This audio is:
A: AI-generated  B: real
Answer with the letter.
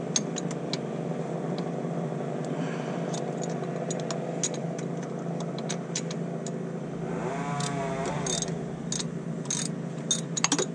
B